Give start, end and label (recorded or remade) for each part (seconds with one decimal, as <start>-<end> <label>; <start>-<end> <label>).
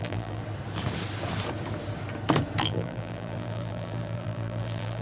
0.0-0.4 remade; 0.4-2.6 recorded; 2.6-5.0 remade